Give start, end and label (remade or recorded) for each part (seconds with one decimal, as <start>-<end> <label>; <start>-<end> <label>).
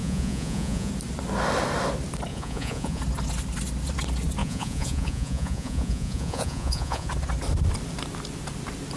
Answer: 0.0-0.9 remade; 0.9-2.3 recorded; 2.3-3.0 remade; 3.0-4.4 recorded; 4.4-7.1 remade; 7.1-9.0 recorded